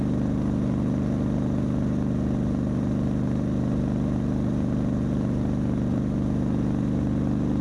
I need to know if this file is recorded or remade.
recorded